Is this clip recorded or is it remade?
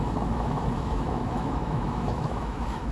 remade